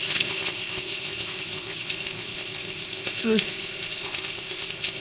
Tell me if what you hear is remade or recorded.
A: remade